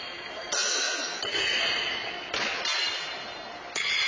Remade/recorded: recorded